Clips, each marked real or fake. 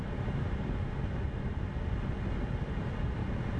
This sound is real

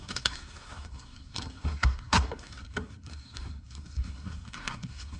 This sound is fake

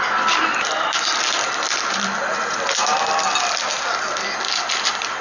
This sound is real